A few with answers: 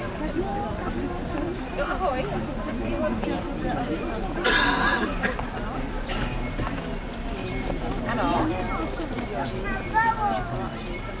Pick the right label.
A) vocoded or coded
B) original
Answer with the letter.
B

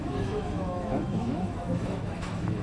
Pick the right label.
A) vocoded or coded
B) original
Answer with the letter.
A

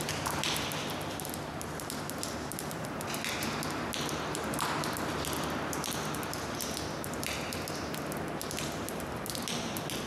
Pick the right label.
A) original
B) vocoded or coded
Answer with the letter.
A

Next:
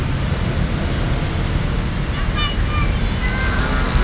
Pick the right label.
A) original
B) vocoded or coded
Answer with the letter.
A